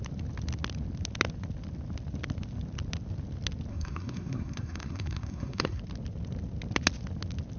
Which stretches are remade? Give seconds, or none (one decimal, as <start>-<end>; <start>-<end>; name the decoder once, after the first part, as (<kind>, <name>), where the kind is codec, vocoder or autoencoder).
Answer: 3.7-5.8 (codec, SNAC)